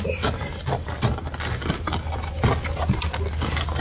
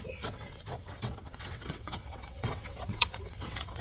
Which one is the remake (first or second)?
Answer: second